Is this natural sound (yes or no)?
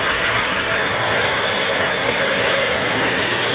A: no